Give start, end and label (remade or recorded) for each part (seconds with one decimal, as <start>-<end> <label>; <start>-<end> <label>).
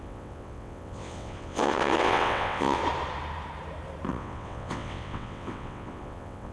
0.0-2.8 remade; 2.8-4.1 recorded; 4.1-6.5 remade